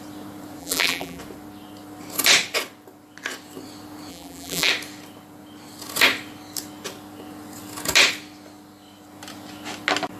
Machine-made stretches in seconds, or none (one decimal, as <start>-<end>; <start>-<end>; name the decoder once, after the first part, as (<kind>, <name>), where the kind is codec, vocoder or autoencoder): 0.6-1.2 (vocoder, BigVGAN v2); 4.1-4.7